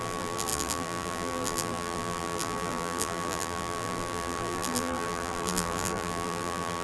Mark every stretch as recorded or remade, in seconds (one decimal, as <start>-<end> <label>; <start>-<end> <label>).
0.0-6.8 remade